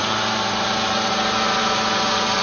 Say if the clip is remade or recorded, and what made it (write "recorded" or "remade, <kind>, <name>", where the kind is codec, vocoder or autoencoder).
remade, vocoder, BigVGAN v2